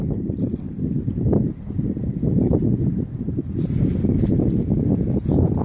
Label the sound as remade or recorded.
recorded